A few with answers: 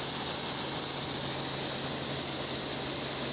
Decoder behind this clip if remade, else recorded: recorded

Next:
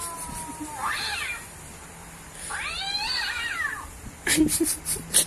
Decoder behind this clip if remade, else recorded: recorded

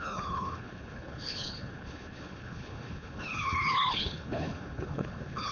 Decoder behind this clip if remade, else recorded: remade, codec, HILCodec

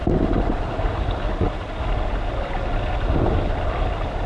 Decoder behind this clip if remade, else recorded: remade, vocoder, BigVGAN v2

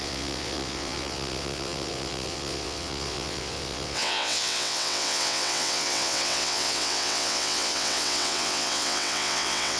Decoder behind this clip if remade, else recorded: remade, vocoder, WaveNeXt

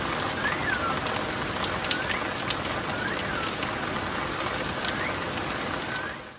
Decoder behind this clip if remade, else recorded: recorded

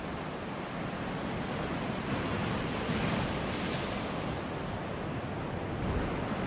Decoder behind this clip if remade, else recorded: recorded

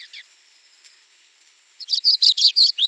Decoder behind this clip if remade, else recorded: remade, codec, HILCodec